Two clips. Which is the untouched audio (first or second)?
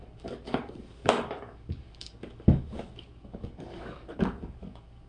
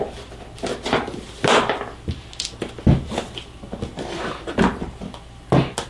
second